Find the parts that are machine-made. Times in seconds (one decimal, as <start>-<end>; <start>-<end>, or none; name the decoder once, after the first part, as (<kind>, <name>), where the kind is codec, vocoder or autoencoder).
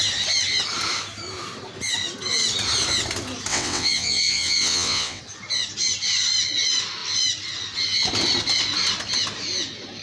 3.5-5.2 (vocoder, WaveNeXt)